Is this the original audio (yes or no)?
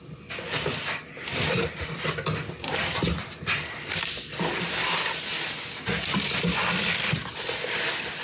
yes